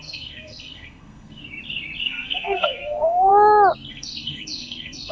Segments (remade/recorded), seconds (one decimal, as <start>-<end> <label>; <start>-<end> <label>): 0.0-1.4 remade; 1.4-2.0 recorded; 2.0-3.3 remade; 3.3-3.9 recorded; 3.9-5.1 remade